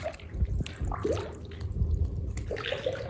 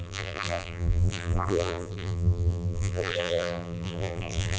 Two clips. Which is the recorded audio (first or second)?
first